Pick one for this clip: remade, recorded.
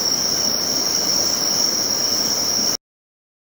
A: recorded